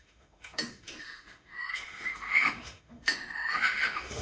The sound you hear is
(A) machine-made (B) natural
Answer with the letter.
A